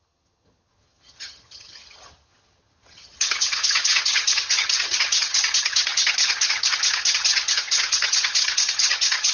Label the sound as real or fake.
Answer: fake